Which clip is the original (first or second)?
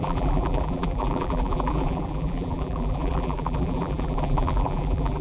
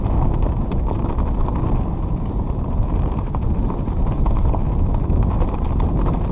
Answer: second